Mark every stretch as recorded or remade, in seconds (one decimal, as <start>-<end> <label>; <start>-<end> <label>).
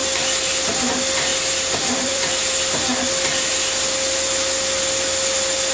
0.0-1.3 recorded; 1.3-2.3 remade; 2.3-5.7 recorded